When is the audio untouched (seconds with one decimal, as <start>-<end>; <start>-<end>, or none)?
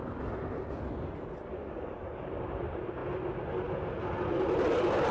0.0-1.5; 2.3-5.1